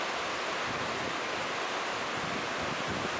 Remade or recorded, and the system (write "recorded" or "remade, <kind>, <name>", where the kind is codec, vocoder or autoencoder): recorded